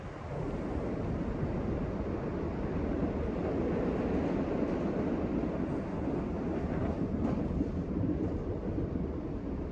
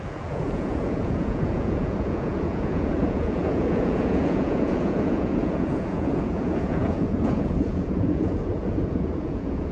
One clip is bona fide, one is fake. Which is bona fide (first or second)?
first